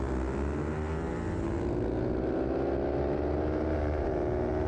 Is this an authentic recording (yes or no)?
yes